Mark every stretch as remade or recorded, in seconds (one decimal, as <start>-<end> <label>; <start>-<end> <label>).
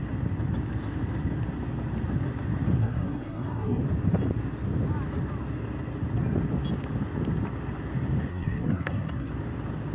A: 0.0-2.8 recorded; 2.8-3.8 remade; 3.8-8.3 recorded; 8.3-9.3 remade; 9.3-9.9 recorded